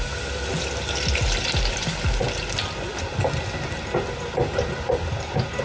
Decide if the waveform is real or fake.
real